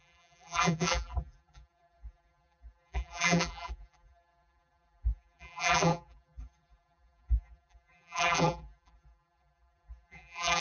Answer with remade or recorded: remade